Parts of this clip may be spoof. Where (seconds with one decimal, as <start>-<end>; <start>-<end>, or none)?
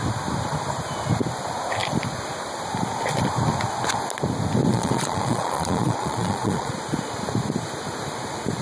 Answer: 4.7-6.7